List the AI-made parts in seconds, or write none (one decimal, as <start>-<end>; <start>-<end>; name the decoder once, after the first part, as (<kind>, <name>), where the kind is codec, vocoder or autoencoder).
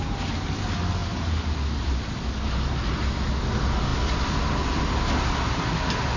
none